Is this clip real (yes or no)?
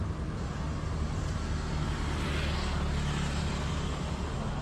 yes